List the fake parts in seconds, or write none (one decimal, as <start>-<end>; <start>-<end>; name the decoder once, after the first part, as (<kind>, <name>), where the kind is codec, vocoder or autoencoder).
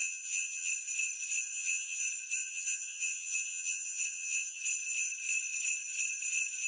0.0-0.7 (vocoder, HiFi-GAN); 1.5-2.0; 2.4-4.6